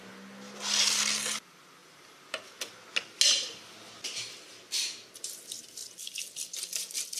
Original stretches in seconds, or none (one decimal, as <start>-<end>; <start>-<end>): 0.0-1.8; 2.4-7.2